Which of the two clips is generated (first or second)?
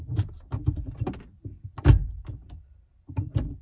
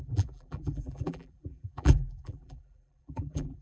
second